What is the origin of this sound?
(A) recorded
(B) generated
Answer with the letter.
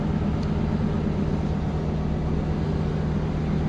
A